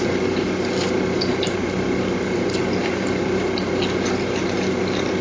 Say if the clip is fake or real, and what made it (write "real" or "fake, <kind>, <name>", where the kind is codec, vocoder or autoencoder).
real